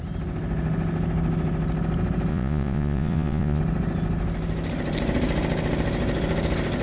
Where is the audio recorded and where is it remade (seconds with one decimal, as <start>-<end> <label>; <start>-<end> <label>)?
0.0-2.3 recorded; 2.3-3.6 remade; 3.6-6.8 recorded